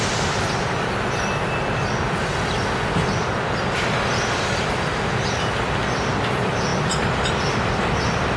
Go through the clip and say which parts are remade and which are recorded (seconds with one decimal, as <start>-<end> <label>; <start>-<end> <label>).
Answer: 0.0-8.4 recorded